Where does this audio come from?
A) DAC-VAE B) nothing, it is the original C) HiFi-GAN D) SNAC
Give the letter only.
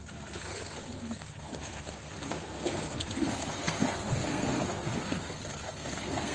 D